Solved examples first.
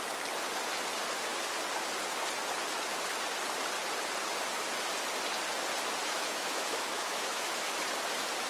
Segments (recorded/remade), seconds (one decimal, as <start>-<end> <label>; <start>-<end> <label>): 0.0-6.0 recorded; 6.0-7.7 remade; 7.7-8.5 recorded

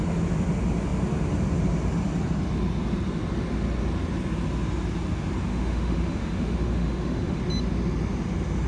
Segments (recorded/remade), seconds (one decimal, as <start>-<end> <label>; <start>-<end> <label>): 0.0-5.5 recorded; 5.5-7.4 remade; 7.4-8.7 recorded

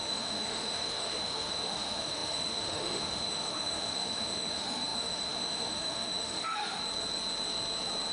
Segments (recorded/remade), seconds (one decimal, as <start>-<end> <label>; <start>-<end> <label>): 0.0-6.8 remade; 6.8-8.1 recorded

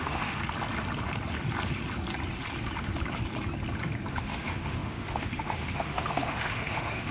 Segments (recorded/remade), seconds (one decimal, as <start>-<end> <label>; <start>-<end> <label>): 0.0-0.4 remade; 0.4-4.1 recorded; 4.1-7.1 remade